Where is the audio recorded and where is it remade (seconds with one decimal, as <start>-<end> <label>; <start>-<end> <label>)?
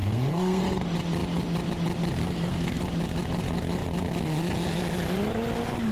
0.0-0.6 remade; 0.6-2.2 recorded; 2.2-2.8 remade; 2.8-5.9 recorded